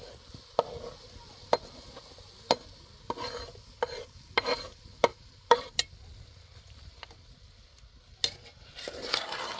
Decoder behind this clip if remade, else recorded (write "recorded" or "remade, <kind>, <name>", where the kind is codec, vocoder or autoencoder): recorded